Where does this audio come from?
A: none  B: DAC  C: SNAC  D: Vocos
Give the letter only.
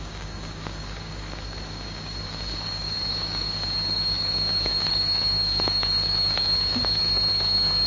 B